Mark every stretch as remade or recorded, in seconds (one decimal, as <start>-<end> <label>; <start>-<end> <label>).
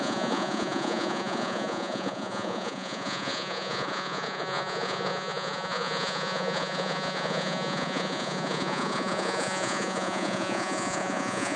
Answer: 0.0-11.6 remade